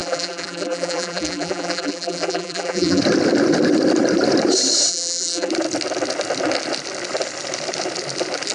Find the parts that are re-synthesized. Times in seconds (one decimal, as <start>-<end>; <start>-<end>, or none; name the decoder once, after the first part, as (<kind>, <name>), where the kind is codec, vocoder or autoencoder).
0.0-3.0 (vocoder, BigVGAN v2); 4.9-5.5

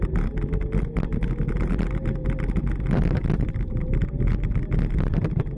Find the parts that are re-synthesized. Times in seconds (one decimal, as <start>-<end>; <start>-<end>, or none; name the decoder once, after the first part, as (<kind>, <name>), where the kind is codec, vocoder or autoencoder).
none

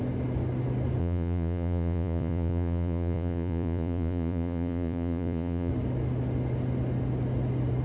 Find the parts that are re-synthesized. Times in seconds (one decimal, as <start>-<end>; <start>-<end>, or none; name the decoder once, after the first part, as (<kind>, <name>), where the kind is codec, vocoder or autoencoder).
1.0-5.7 (vocoder, Vocos)

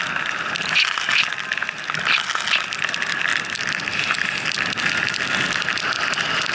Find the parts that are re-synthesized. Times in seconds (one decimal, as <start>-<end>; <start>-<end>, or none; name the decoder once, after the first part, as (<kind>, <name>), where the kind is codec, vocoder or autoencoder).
3.3-3.9 (vocoder, BigVGAN v2)

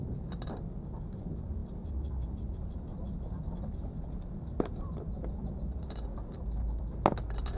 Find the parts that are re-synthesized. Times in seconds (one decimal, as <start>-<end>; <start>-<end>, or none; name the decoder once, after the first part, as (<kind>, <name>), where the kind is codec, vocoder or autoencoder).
none

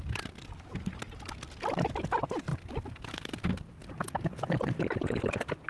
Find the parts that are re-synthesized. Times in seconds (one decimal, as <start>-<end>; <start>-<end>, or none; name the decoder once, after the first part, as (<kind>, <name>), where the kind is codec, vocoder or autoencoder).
none

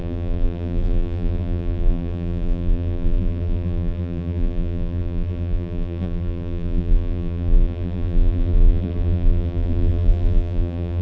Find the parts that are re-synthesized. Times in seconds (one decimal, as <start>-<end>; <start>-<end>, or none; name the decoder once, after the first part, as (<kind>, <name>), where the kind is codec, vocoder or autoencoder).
0.0-11.0 (vocoder, BigVGAN v2)